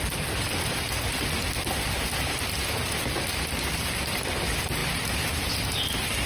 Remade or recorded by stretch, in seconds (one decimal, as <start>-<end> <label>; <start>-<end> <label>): 0.0-6.3 recorded